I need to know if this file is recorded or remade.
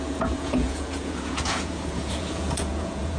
remade